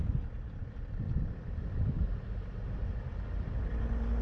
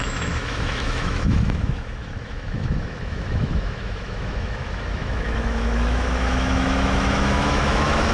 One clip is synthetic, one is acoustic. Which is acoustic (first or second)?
first